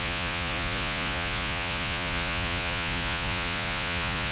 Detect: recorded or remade remade